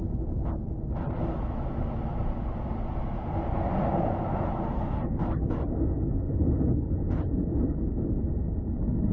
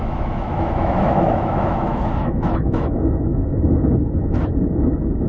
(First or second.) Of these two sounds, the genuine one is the first